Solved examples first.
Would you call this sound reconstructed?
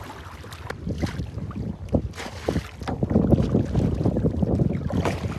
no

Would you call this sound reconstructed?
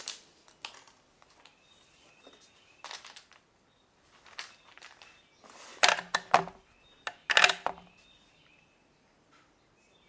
no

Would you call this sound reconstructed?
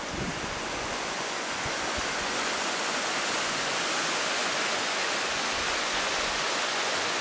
yes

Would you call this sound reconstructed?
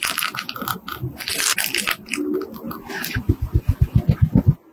no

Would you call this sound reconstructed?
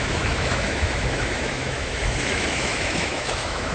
yes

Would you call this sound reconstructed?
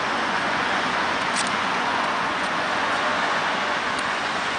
yes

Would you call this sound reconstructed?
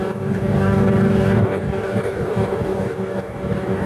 yes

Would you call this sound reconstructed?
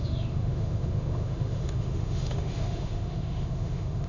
yes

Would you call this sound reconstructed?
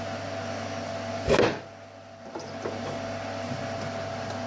no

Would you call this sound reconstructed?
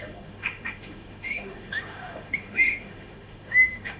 yes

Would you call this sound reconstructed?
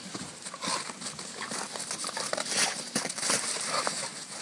no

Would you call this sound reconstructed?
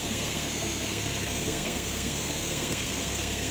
yes